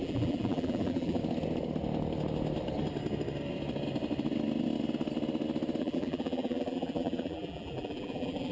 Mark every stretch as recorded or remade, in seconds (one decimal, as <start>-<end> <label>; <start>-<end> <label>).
0.0-1.2 remade; 1.2-5.8 recorded; 5.8-8.5 remade